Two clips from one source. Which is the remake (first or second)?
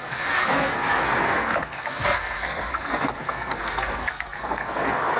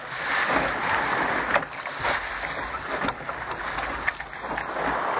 first